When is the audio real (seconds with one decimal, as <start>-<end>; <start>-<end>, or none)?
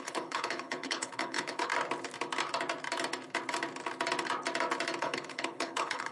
1.7-5.0